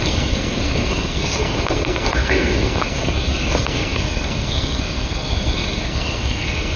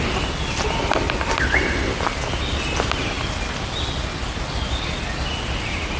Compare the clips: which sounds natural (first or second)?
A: second